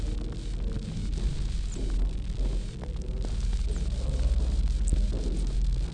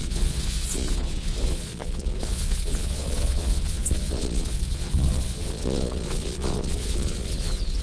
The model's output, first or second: second